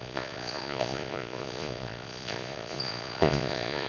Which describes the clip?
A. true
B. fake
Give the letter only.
B